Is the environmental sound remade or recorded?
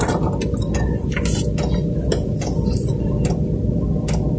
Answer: recorded